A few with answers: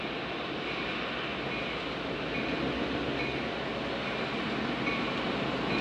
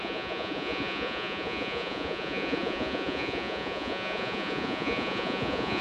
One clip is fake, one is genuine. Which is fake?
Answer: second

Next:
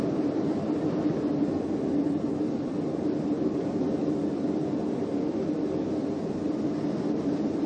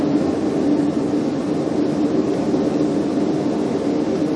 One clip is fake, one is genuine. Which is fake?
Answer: first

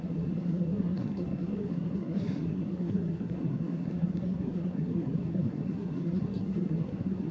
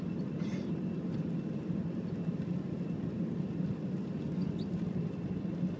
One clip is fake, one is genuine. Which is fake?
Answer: first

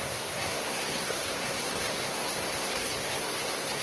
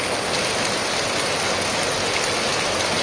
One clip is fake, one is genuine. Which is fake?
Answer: first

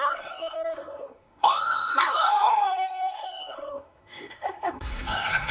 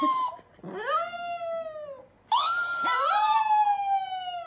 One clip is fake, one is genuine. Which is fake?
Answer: first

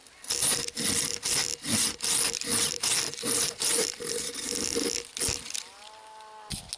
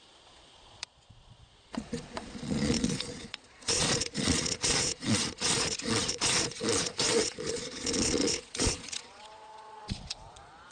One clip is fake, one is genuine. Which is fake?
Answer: second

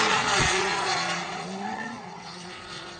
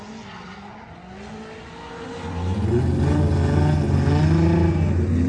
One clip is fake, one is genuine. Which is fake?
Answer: first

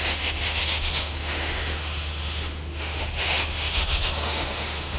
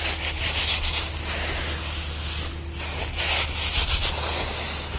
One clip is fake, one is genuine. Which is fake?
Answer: first